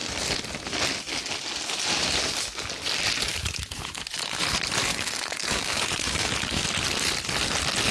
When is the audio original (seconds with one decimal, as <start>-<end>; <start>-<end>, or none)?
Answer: 0.0-3.3; 4.4-4.9; 6.6-7.9